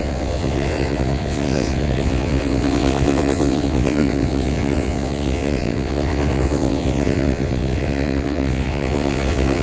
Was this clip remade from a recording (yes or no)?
yes